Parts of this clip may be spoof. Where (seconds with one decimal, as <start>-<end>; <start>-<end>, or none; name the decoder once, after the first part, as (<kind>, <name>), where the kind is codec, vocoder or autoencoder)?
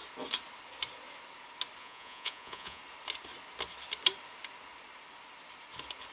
1.8-2.8 (vocoder, Vocos)